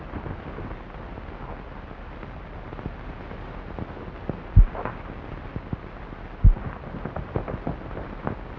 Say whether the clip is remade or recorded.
recorded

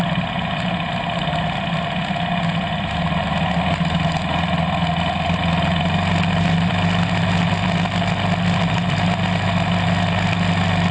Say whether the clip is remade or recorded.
recorded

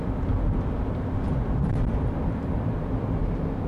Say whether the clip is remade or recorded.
remade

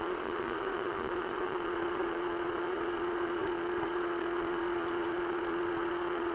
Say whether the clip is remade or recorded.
remade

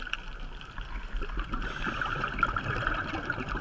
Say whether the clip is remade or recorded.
recorded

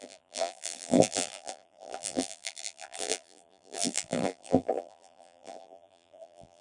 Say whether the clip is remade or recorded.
remade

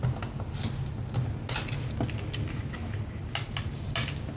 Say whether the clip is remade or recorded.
recorded